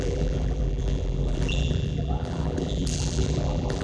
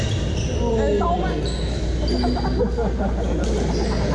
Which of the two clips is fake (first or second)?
first